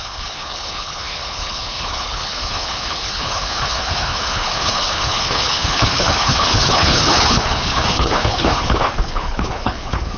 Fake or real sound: fake